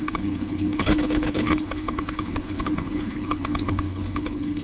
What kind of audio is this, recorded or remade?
remade